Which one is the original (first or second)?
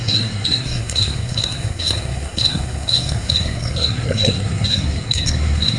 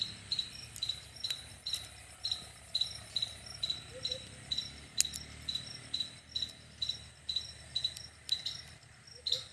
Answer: second